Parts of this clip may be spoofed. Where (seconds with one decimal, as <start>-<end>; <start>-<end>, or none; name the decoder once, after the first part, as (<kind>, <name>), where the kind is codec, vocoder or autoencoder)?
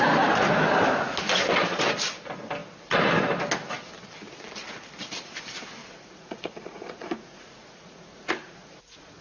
5.8-9.2 (vocoder, Vocos)